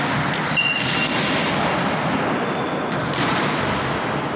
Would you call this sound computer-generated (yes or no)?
no